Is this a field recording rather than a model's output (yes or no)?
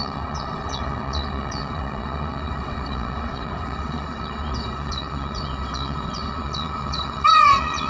no